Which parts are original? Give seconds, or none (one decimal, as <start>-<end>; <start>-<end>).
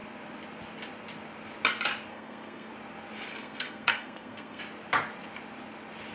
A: 0.0-2.1; 2.7-3.3; 4.6-6.1